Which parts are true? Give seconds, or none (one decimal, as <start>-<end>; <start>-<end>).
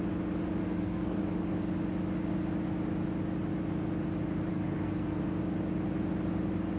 0.0-0.6; 1.2-4.5; 5.2-6.8